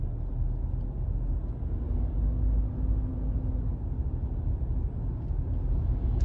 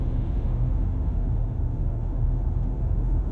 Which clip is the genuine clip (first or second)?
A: first